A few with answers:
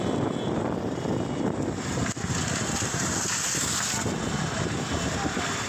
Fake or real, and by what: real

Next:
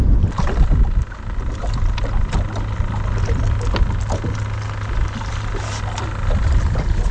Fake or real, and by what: real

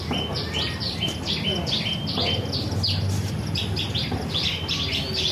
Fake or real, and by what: real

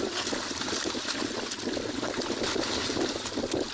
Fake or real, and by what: real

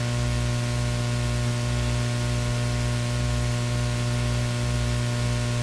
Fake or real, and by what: real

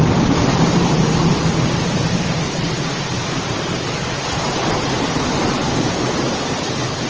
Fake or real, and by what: fake, vocoder, BigVGAN v2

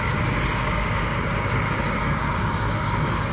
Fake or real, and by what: fake, codec, DAC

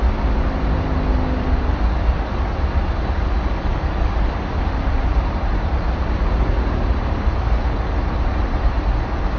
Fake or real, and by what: real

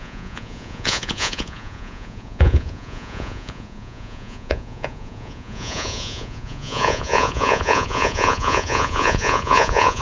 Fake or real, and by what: fake, vocoder, Vocos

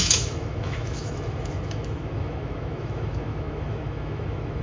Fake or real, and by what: fake, autoencoder, DAC-VAE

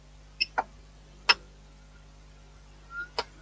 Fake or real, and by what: real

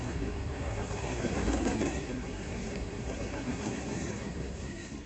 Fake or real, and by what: fake, codec, SNAC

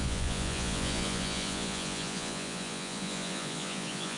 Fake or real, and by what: fake, vocoder, Vocos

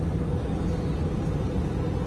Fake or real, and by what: real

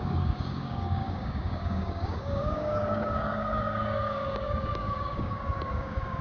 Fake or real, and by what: fake, codec, DAC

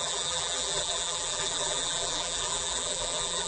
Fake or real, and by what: fake, vocoder, BigVGAN v2